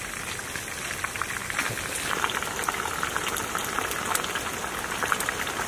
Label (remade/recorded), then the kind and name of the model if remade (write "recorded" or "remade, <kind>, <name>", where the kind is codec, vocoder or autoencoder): recorded